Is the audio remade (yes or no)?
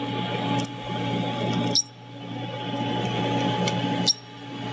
no